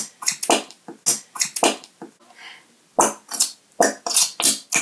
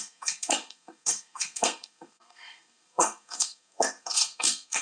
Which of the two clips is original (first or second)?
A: first